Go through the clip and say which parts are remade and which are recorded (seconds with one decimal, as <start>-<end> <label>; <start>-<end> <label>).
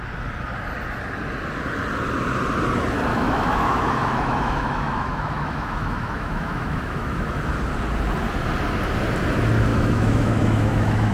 0.0-3.1 recorded; 3.1-7.4 remade; 7.4-9.7 recorded; 9.7-11.1 remade